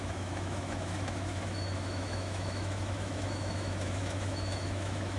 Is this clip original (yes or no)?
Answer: no